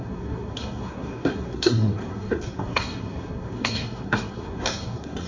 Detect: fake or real fake